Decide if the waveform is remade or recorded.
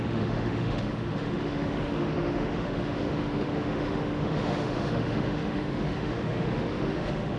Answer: remade